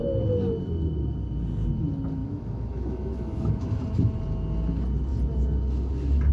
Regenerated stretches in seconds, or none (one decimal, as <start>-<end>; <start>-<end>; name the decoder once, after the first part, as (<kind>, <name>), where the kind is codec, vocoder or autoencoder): 2.2-3.8 (autoencoder, DAC-VAE)